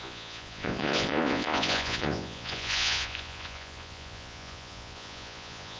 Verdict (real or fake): fake